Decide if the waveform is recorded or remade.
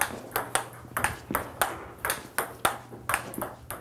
recorded